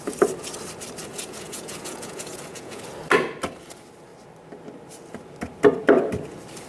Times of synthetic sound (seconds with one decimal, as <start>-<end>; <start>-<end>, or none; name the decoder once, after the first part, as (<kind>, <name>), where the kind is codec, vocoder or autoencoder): 1.1-2.8 (vocoder, Vocos)

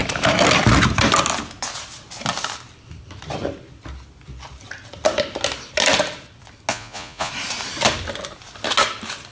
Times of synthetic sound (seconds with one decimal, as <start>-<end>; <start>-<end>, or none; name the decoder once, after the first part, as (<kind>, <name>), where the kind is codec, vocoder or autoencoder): 6.7-7.3 (vocoder, Vocos)

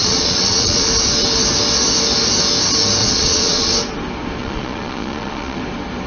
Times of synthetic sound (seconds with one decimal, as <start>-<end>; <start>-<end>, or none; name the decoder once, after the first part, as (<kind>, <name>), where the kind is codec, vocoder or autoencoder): 0.0-0.9 (vocoder, Vocos); 3.0-3.7; 4.4-5.6